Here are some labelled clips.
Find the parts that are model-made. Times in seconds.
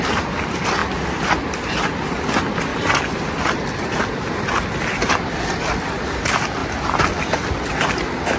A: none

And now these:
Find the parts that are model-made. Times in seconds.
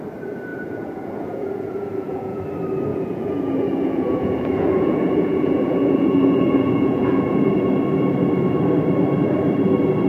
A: 0.5-2.4 (vocoder, Vocos); 2.9-7.5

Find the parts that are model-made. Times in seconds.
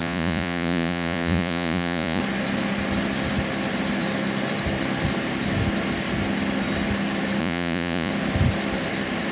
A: 0.0-2.2 (vocoder, Vocos); 7.4-8.1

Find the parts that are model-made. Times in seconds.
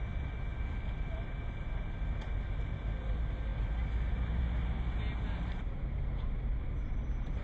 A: none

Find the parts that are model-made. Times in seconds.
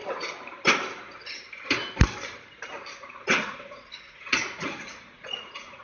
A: 2.9-5.8 (vocoder, Vocos)